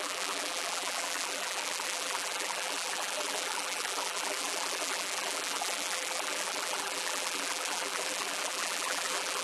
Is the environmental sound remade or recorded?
remade